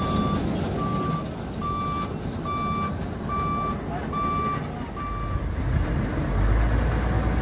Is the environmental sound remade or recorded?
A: recorded